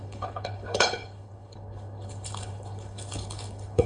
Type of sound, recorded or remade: remade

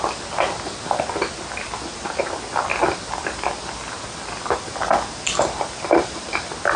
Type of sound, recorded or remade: recorded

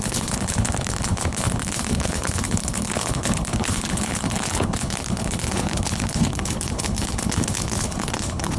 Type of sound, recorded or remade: remade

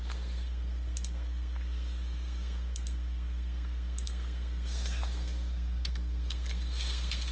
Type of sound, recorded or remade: remade